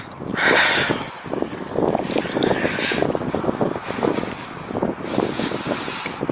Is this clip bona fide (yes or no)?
yes